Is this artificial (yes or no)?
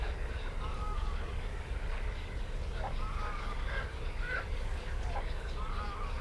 yes